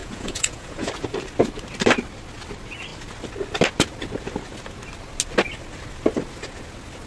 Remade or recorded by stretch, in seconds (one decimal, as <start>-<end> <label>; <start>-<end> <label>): 0.0-0.9 remade; 0.9-7.1 recorded